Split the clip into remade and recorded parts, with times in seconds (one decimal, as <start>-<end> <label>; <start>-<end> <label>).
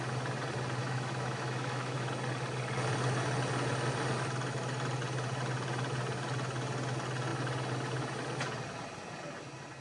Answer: 0.0-0.8 recorded; 0.8-2.1 remade; 2.1-9.8 recorded